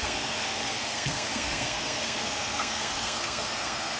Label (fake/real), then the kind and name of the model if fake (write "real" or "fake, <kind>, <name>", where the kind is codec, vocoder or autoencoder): fake, codec, SNAC